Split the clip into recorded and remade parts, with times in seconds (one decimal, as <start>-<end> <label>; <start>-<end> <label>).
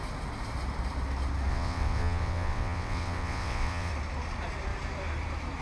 0.0-1.5 recorded; 1.5-3.9 remade; 3.9-5.6 recorded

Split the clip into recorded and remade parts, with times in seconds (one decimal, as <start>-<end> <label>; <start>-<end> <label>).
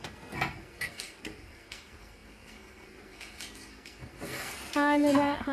0.0-5.5 remade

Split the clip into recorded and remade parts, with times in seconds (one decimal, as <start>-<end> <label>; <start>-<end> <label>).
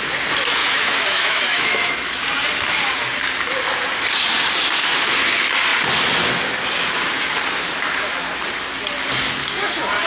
0.0-0.6 recorded; 0.6-1.9 remade; 1.9-10.1 recorded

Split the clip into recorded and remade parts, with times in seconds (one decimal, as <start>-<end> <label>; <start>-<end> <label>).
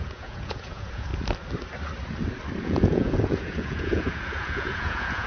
0.0-1.1 remade; 1.1-2.6 recorded; 2.6-5.3 remade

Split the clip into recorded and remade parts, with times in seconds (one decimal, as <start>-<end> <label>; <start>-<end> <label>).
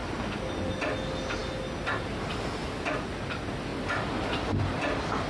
0.0-0.7 remade; 0.7-5.3 recorded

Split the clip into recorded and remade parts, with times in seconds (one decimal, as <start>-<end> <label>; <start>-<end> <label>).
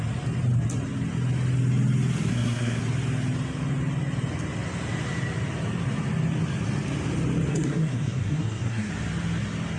0.0-2.3 recorded; 2.3-2.8 remade; 2.8-7.5 recorded; 7.5-8.9 remade; 8.9-9.8 recorded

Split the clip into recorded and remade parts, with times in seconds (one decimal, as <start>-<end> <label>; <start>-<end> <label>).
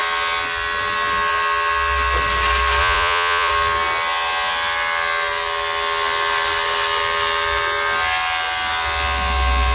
0.0-2.8 recorded; 2.8-3.5 remade; 3.5-9.7 recorded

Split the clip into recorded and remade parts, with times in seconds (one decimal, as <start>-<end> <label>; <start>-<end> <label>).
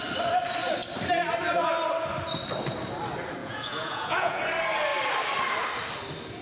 0.0-3.4 recorded; 3.4-4.4 remade; 4.4-6.4 recorded